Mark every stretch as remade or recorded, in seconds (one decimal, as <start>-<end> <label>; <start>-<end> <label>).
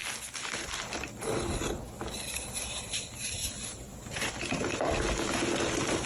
0.0-6.1 recorded